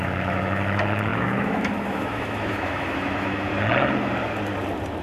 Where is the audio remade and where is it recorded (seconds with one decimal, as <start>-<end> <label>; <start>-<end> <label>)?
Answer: 0.0-3.5 remade; 3.5-5.0 recorded

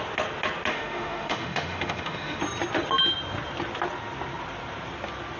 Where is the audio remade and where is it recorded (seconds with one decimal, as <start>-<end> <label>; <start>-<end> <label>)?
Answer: 0.0-0.7 recorded; 0.7-2.4 remade; 2.4-5.4 recorded

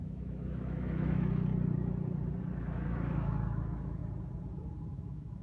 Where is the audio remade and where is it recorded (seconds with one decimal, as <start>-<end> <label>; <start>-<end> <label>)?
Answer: 0.0-1.5 remade; 1.5-2.6 recorded; 2.6-4.0 remade; 4.0-4.9 recorded; 4.9-5.4 remade

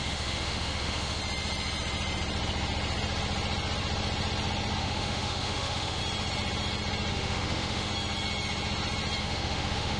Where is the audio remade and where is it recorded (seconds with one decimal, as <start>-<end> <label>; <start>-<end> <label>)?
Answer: 0.0-1.2 remade; 1.2-4.8 recorded; 4.8-6.0 remade; 6.0-7.1 recorded; 7.1-7.9 remade; 7.9-9.2 recorded; 9.2-10.0 remade

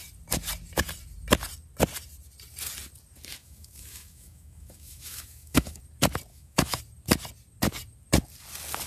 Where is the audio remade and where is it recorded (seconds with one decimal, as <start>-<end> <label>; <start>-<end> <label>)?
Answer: 0.0-3.4 recorded; 3.4-5.8 remade; 5.8-6.3 recorded; 6.3-6.8 remade; 6.8-8.9 recorded